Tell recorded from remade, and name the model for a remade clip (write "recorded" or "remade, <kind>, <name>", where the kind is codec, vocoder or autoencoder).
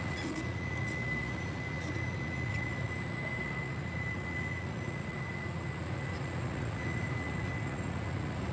remade, vocoder, Vocos